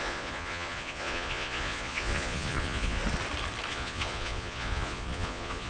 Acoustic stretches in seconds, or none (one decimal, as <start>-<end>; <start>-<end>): 3.0-3.7